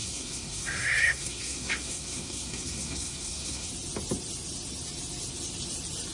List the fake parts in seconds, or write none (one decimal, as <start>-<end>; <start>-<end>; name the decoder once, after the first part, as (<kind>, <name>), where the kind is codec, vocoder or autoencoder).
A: 0.0-3.7 (codec, SNAC)